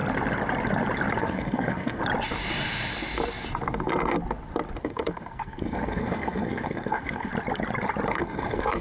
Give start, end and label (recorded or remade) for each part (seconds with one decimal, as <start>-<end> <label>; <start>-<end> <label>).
0.0-1.2 recorded; 1.2-2.0 remade; 2.0-4.8 recorded; 4.8-7.3 remade; 7.3-8.1 recorded; 8.1-8.8 remade